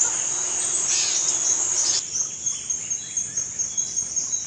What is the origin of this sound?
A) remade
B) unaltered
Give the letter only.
B